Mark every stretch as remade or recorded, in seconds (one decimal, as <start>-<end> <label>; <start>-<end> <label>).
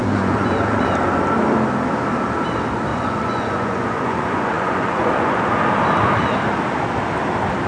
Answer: 0.0-0.9 remade; 0.9-2.9 recorded; 2.9-5.6 remade; 5.6-7.7 recorded